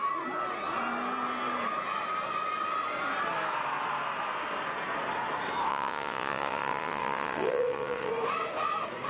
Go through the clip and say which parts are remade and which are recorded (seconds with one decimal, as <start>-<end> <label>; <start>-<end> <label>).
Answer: 0.0-5.7 recorded; 5.7-8.1 remade; 8.1-9.1 recorded